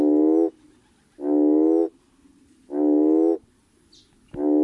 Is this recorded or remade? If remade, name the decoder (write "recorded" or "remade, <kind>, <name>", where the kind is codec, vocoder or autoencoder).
recorded